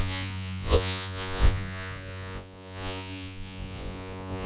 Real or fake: fake